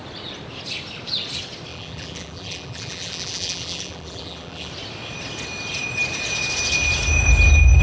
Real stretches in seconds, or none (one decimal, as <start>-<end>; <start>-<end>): 0.0-1.7; 4.7-7.8